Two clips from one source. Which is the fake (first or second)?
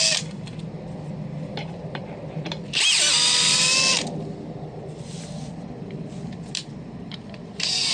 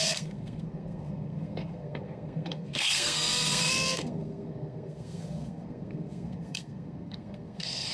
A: second